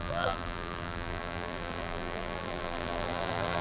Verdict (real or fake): fake